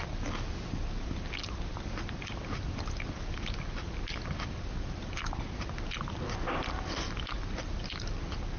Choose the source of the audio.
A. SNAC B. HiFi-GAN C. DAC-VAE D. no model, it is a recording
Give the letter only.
D